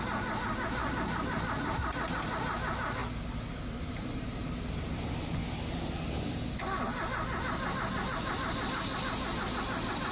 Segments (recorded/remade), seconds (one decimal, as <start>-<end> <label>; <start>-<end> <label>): 0.0-10.1 recorded

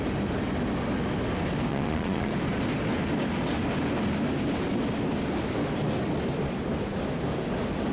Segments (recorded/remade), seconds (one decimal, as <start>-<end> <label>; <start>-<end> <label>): 0.0-1.7 recorded; 1.7-2.3 remade; 2.3-7.9 recorded

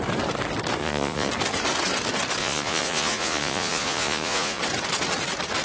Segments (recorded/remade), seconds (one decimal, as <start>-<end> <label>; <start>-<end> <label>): 0.0-0.8 recorded; 0.8-1.3 remade; 1.3-2.4 recorded; 2.4-4.6 remade; 4.6-5.6 recorded

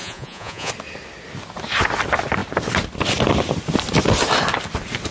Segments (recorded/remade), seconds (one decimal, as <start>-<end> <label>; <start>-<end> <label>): 0.0-0.7 remade; 0.7-5.1 recorded

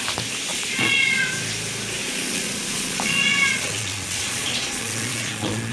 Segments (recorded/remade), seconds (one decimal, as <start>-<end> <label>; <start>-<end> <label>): 0.0-0.5 recorded; 0.5-1.3 remade; 1.3-2.0 recorded; 2.0-5.7 remade